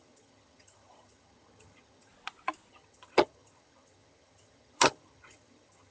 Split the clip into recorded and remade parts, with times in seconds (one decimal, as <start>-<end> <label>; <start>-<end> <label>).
0.0-2.1 remade; 2.1-2.7 recorded; 2.7-5.9 remade